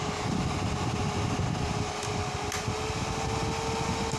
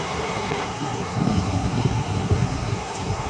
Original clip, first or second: first